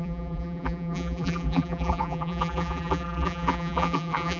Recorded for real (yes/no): no